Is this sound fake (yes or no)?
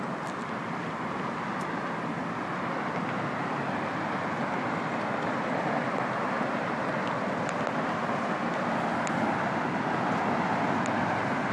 no